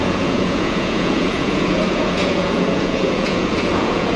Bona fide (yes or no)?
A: no